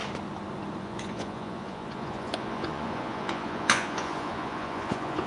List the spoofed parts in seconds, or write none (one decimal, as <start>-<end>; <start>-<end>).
0.8-5.3

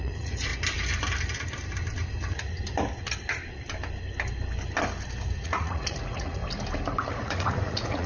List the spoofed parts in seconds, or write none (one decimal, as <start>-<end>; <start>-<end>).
0.0-0.5; 5.4-6.4; 7.1-8.1

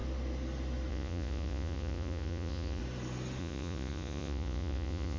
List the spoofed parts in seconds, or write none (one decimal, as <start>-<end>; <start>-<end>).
0.9-2.8; 3.4-5.2

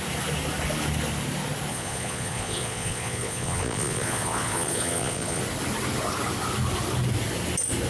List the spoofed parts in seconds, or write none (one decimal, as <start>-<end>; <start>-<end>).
1.7-5.4

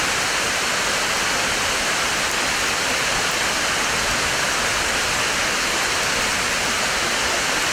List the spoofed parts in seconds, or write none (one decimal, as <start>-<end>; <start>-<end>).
none

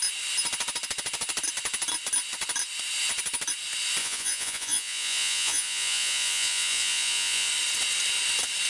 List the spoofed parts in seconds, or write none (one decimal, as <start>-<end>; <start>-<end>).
4.0-7.5

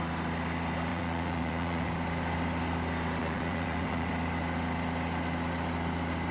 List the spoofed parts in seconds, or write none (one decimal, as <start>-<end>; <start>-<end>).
0.9-1.9; 3.2-4.1

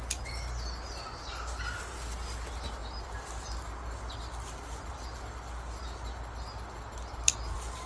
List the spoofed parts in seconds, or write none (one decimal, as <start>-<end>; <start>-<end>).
none